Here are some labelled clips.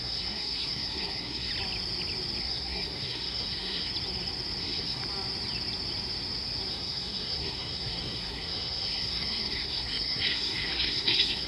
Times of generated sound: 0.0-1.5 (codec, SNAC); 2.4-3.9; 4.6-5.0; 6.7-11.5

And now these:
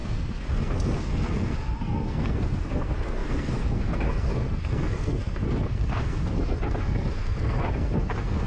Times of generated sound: 0.0-8.5 (codec, SNAC)

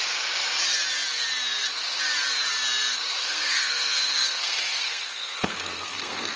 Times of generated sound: 3.2-6.4 (codec, SNAC)

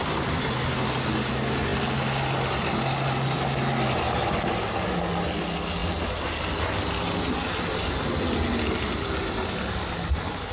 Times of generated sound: none